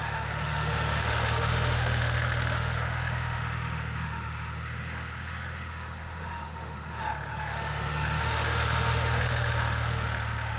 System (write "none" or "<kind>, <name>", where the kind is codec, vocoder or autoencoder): autoencoder, DAC-VAE